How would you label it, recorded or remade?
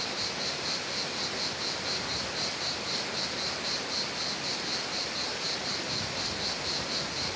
recorded